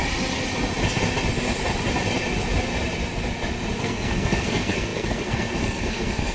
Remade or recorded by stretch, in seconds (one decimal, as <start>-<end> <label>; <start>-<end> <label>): 0.0-3.8 recorded; 3.8-6.3 remade